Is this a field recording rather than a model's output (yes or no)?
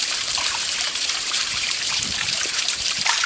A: no